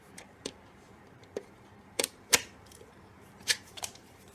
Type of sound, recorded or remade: remade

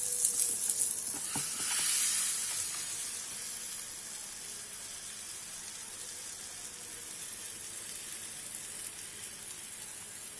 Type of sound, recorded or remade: recorded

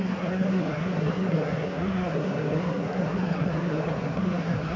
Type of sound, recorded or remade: remade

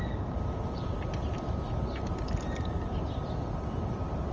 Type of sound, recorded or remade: recorded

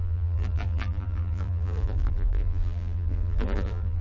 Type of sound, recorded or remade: remade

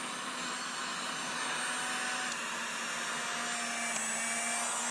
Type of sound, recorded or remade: recorded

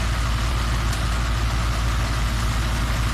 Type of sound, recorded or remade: recorded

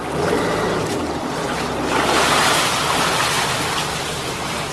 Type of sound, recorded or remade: recorded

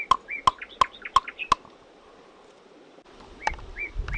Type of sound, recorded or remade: recorded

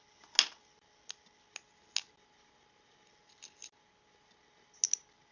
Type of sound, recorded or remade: recorded